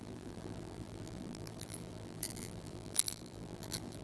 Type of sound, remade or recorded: remade